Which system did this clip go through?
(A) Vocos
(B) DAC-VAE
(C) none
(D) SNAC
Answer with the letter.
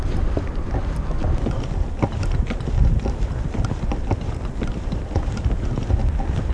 C